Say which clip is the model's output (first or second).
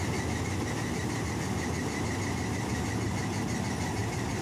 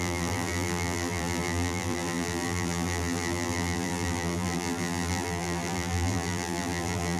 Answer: second